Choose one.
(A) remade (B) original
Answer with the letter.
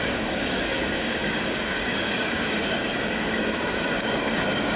A